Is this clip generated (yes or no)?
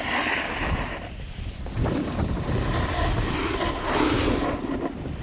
yes